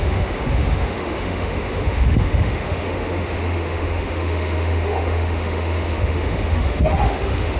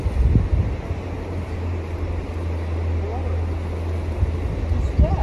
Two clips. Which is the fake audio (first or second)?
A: first